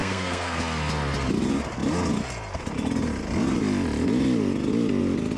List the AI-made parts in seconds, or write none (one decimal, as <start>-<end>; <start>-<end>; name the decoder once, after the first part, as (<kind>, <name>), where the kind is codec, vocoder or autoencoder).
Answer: 0.0-0.6 (codec, SNAC)

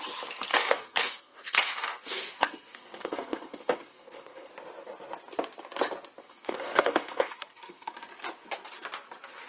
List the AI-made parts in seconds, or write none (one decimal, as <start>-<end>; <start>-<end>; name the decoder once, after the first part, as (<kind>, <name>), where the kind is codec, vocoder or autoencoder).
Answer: 0.5-4.5 (codec, SNAC); 6.2-7.9

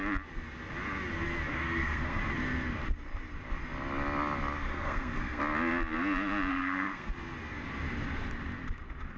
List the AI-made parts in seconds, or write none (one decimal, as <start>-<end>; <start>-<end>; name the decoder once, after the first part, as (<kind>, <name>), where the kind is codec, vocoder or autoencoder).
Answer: 1.5-2.2 (codec, SNAC); 4.6-5.4; 6.5-7.1